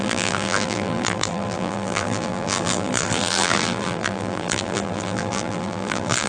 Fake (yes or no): yes